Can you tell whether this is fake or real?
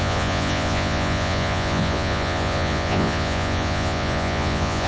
fake